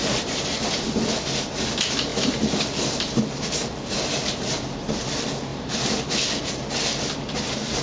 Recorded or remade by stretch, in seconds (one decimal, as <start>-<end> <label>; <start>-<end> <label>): 0.0-1.1 remade; 1.1-2.1 recorded; 2.1-3.2 remade; 3.2-5.5 recorded; 5.5-6.0 remade; 6.0-7.8 recorded